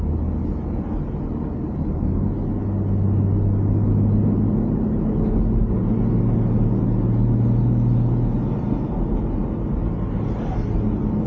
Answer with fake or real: real